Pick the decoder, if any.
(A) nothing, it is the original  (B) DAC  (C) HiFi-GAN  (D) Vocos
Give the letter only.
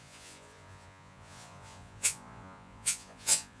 D